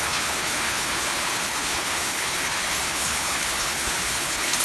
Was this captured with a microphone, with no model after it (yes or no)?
no